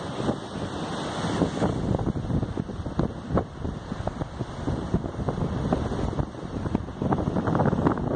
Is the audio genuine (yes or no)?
yes